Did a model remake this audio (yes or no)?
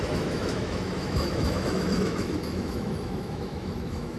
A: yes